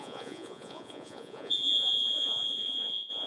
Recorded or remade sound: remade